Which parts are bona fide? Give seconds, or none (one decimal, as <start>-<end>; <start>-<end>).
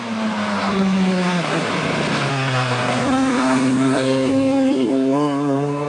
0.0-0.7; 1.7-2.3